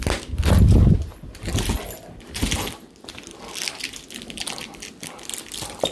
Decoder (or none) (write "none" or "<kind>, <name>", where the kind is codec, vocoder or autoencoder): none